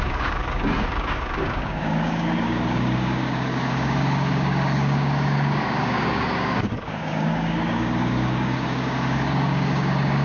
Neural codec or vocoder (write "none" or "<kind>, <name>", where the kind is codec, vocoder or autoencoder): codec, DAC